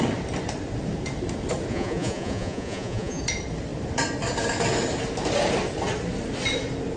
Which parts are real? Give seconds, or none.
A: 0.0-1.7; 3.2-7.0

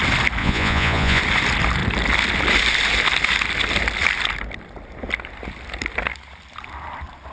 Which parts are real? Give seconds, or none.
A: 0.0-0.4; 1.2-7.3

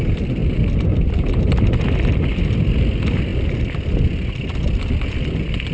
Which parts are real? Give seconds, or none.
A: 0.0-5.7

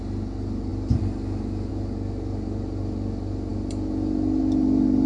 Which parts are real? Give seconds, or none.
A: 0.0-0.7; 1.7-3.5; 4.4-5.1

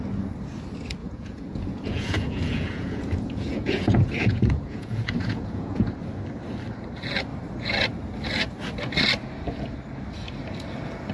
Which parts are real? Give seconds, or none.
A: 0.0-1.0; 5.9-11.1

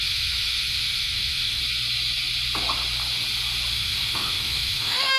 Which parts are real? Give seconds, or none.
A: 1.6-3.7